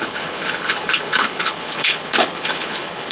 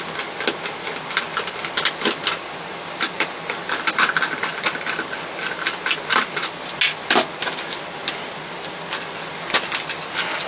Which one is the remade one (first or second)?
first